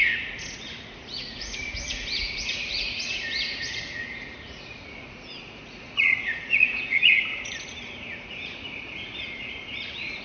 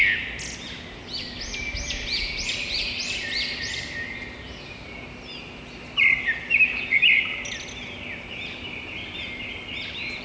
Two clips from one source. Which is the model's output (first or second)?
first